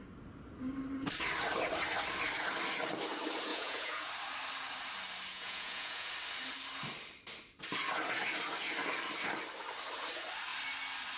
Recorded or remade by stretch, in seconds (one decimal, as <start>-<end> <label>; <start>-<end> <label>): 0.0-3.5 recorded; 3.5-4.1 remade; 4.1-5.3 recorded; 5.3-6.1 remade; 6.1-11.2 recorded